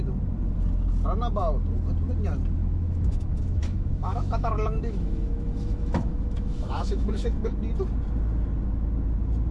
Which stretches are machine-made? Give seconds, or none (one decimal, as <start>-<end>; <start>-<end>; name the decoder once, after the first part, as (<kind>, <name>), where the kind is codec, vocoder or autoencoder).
2.6-7.5 (autoencoder, DAC-VAE)